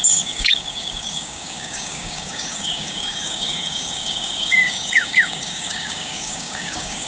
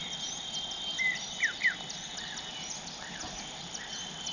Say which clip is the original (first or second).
second